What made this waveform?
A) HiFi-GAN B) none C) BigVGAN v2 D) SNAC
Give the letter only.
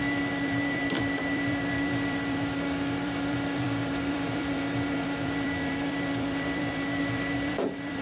C